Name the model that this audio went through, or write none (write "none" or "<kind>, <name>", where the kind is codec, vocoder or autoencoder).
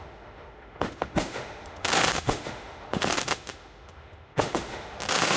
autoencoder, DAC-VAE